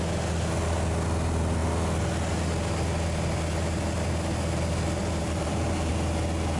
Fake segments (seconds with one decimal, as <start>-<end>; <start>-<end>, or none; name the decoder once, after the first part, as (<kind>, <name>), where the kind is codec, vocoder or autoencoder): 5.0-5.9 (vocoder, BigVGAN v2)